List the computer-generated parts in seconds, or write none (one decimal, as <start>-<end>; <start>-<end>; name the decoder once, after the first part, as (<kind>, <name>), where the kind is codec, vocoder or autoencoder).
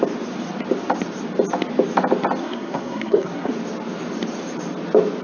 2.4-3.5 (codec, SNAC)